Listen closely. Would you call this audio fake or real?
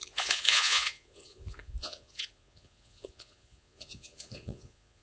fake